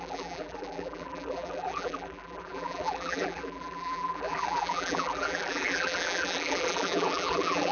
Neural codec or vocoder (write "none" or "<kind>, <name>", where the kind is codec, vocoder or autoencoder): vocoder, BigVGAN v2